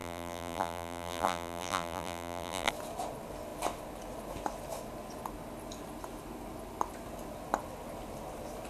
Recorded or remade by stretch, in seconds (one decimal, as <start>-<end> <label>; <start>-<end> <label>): 0.0-2.7 remade; 2.7-8.7 recorded